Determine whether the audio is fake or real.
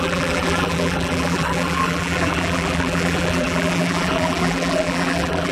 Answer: fake